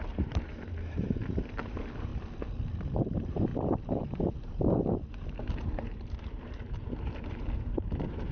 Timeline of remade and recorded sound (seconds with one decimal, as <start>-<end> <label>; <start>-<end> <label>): 0.0-2.1 remade; 2.1-3.1 recorded; 3.1-8.3 remade